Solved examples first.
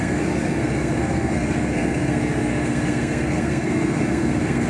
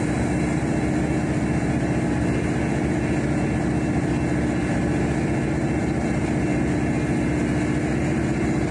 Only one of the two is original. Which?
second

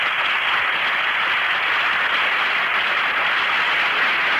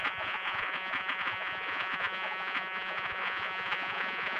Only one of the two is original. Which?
first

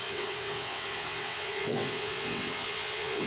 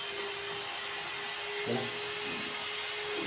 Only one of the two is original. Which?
second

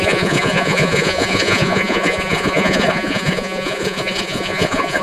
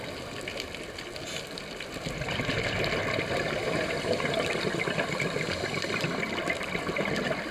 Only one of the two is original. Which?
second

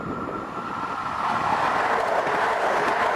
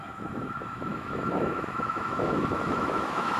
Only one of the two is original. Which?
first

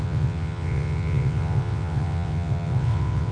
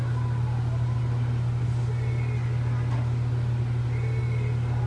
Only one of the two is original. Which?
second